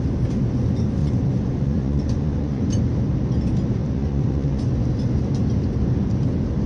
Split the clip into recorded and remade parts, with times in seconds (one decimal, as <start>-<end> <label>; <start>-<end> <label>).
0.0-1.0 recorded; 1.0-2.6 remade; 2.6-3.8 recorded; 3.8-4.7 remade; 4.7-6.7 recorded